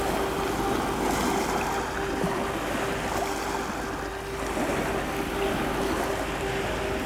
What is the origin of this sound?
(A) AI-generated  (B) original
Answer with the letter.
B